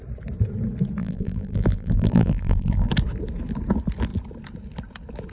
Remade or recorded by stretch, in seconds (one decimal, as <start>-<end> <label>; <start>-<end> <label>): 0.0-1.0 recorded; 1.0-2.9 remade; 2.9-5.3 recorded